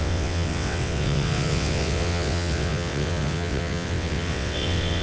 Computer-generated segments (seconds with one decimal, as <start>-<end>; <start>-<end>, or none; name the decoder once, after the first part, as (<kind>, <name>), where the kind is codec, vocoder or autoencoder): 0.0-5.0 (vocoder, WaveNeXt)